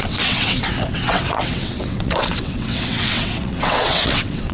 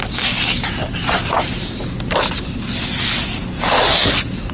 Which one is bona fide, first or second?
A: second